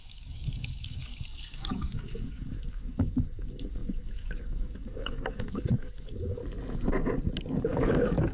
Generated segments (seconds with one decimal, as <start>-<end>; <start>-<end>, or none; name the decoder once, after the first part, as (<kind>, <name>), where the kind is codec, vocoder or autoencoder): 0.0-6.4 (codec, DAC); 7.6-8.3

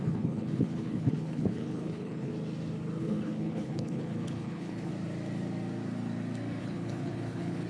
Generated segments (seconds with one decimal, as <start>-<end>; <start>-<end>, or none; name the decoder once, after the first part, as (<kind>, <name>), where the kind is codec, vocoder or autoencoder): 0.0-2.3 (codec, HILCodec); 3.0-4.9; 6.6-7.7

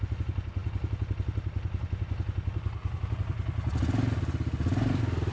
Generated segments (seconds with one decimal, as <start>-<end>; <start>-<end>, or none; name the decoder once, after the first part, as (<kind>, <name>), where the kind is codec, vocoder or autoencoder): none

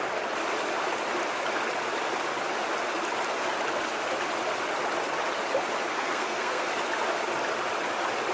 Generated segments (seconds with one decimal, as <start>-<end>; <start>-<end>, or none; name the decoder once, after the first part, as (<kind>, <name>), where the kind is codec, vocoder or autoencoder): 5.9-6.7 (codec, SNAC)